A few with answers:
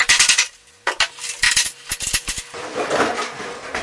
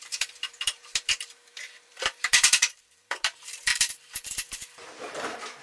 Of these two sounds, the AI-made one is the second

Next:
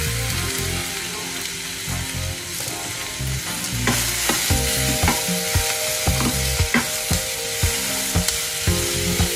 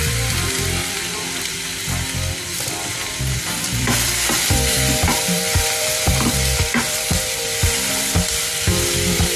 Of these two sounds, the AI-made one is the second